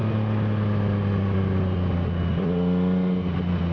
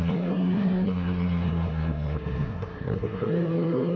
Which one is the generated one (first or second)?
second